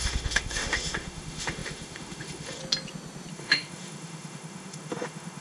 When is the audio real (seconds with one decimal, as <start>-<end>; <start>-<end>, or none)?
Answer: 2.6-3.3